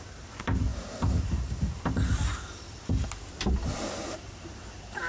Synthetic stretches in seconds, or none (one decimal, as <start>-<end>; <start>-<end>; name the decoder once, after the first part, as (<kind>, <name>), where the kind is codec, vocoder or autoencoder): 0.0-5.1 (vocoder, BigVGAN v2)